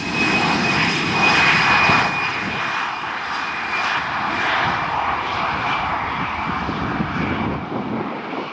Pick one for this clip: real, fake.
fake